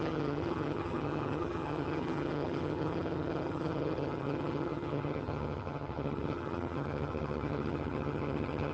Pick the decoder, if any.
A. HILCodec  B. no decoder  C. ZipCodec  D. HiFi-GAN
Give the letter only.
D